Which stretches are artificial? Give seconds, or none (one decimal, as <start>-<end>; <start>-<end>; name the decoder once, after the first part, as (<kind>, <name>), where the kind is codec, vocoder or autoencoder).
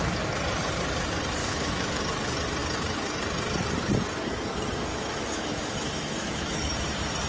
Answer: 1.4-2.0 (autoencoder, DAC-VAE); 4.9-6.7